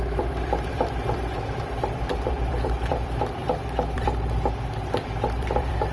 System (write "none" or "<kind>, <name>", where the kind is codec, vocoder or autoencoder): vocoder, BigVGAN v2